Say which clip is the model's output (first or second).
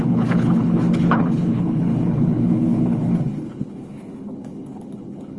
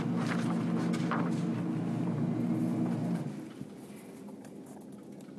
first